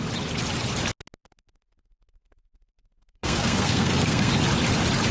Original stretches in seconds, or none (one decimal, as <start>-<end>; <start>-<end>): 0.0-1.2; 4.3-5.1